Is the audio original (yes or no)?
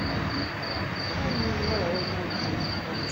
yes